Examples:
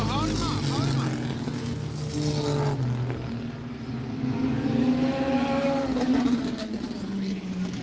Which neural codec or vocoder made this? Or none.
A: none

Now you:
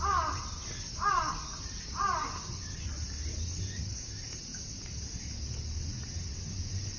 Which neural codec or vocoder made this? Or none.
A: none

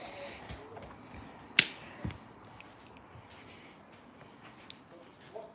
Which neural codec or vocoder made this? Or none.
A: none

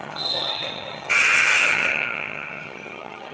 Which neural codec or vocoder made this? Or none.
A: vocoder, HiFi-GAN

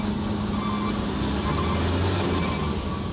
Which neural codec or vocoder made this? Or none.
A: none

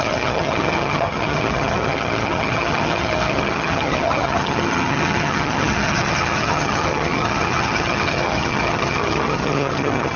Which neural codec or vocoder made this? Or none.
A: vocoder, HiFi-GAN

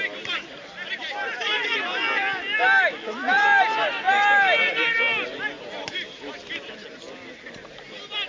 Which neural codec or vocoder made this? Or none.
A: none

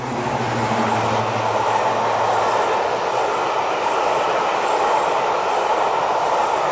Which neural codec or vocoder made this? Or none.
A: none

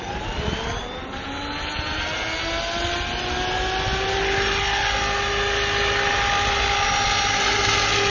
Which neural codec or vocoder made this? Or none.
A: none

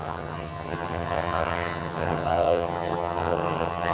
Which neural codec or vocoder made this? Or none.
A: vocoder, HiFi-GAN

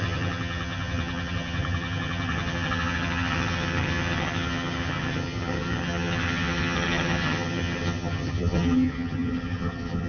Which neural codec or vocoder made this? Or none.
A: vocoder, HiFi-GAN